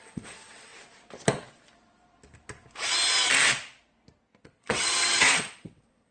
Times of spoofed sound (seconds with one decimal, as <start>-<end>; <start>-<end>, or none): 0.0-0.7; 4.4-6.1

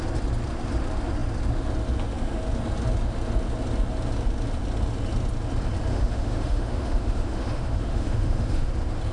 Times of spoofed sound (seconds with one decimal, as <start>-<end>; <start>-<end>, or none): 5.9-8.7